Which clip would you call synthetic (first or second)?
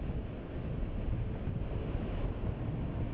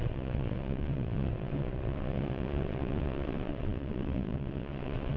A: second